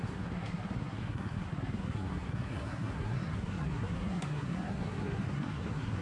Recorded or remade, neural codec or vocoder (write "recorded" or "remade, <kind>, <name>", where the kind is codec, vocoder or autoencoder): remade, codec, SNAC